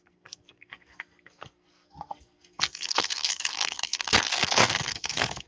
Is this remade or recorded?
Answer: remade